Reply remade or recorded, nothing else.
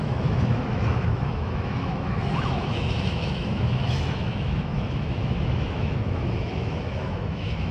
remade